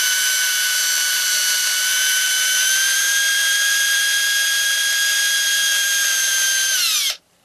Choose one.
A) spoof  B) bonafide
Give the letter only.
A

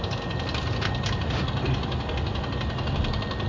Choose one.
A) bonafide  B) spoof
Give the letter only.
A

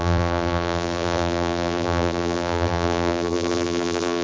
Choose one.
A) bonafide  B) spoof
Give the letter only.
B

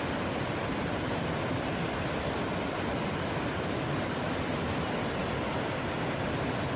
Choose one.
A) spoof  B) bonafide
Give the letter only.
B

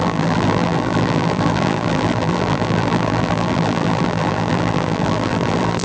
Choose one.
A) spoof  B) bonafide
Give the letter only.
A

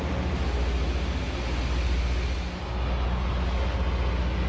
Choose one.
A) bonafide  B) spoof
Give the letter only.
A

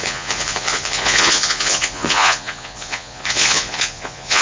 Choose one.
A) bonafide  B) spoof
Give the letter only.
B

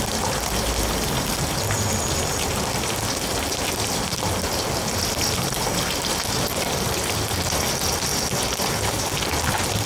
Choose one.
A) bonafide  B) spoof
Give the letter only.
A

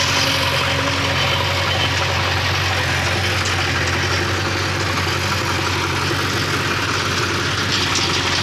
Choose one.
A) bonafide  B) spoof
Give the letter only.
A